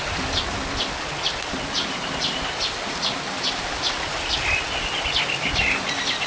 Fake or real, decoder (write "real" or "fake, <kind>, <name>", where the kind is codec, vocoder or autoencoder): real